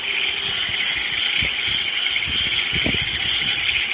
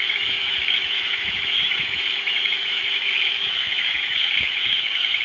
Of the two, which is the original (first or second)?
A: first